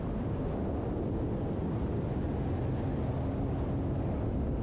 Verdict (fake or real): real